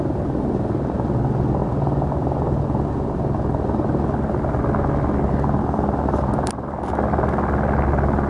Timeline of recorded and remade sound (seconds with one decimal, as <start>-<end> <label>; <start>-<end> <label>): 0.0-8.3 recorded